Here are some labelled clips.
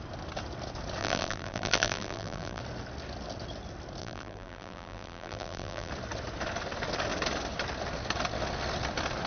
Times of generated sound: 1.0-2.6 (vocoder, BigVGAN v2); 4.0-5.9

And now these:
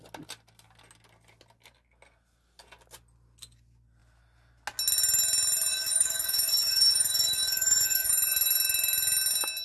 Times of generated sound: 5.7-8.1 (codec, DAC)